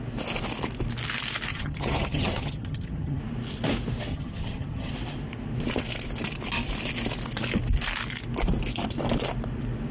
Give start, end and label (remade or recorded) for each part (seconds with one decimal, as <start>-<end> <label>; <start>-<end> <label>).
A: 0.0-1.5 recorded; 1.5-3.2 remade; 3.2-4.1 recorded; 4.1-4.9 remade; 4.9-9.9 recorded